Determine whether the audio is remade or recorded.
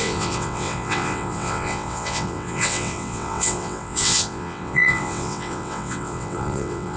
remade